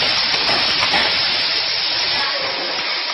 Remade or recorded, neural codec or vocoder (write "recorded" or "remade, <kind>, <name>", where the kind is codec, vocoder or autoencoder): recorded